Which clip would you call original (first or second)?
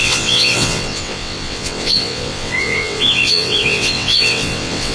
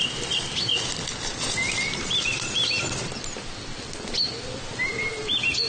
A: second